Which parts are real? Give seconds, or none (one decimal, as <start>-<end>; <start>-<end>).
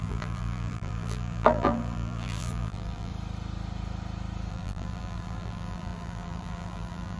3.1-4.5